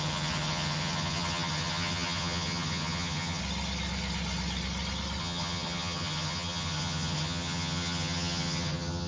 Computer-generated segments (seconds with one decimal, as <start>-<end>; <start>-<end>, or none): 0.0-3.4; 5.2-9.1